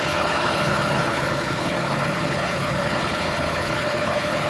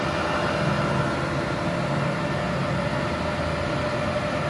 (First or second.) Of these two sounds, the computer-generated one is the first